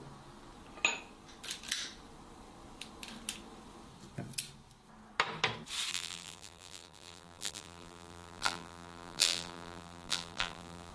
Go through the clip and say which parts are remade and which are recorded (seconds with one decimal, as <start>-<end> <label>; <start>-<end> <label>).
0.0-5.9 recorded; 5.9-10.9 remade